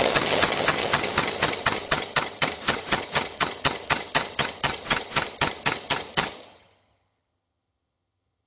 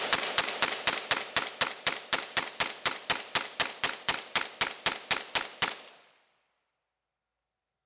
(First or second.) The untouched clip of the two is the second